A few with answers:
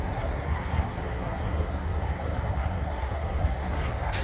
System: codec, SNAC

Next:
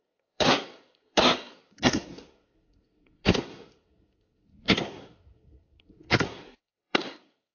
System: codec, SNAC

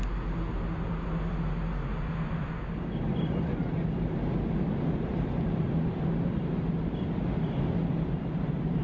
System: none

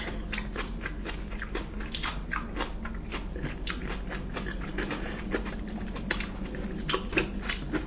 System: none